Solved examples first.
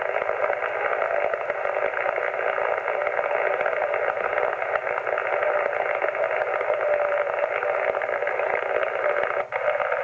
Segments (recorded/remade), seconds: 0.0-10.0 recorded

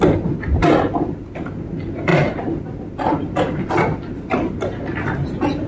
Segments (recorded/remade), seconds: 0.0-5.7 recorded

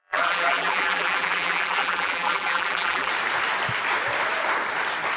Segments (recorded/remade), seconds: 0.0-3.1 remade; 3.1-5.2 recorded

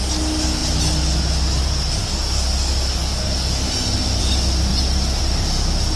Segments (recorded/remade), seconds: 0.0-6.0 recorded

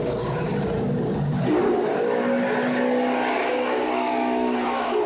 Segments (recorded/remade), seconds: 0.0-0.5 remade; 0.5-3.5 recorded; 3.5-5.1 remade

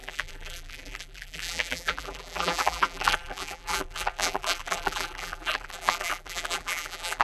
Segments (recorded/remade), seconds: 0.0-7.2 remade

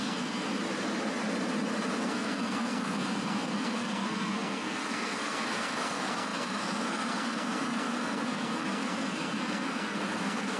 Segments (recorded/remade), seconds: 0.0-0.5 remade; 0.5-2.0 recorded; 2.0-10.6 remade

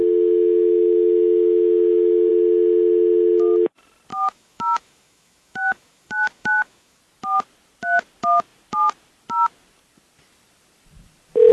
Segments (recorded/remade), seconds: 0.0-4.1 recorded; 4.1-7.0 remade; 7.0-11.5 recorded